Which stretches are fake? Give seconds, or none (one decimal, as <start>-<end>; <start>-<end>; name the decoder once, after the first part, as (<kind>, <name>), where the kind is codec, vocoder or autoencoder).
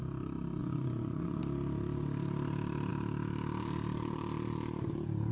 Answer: 0.6-1.4 (vocoder, Vocos)